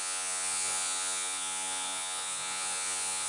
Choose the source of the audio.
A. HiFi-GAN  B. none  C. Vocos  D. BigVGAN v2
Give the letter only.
C